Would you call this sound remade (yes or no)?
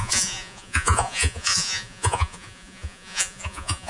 yes